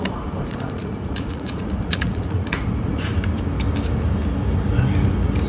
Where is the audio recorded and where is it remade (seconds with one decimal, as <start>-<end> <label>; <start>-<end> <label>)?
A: 0.0-3.1 remade; 3.1-5.5 recorded

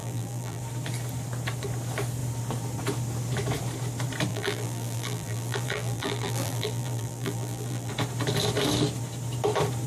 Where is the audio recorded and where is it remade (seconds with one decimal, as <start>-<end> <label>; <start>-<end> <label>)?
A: 0.0-0.6 remade; 0.6-4.3 recorded; 4.3-7.9 remade; 7.9-9.9 recorded

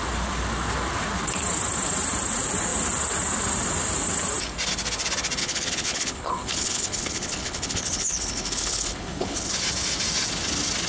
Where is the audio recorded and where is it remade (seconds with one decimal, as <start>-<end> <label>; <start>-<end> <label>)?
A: 0.0-5.4 recorded; 5.4-9.5 remade; 9.5-10.9 recorded

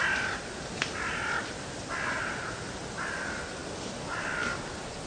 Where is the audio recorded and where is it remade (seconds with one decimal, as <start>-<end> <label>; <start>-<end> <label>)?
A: 0.0-5.1 remade

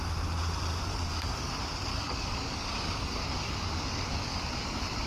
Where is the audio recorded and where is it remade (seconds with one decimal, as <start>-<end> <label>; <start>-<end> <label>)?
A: 0.0-0.9 recorded; 0.9-1.5 remade; 1.5-1.9 recorded; 1.9-5.1 remade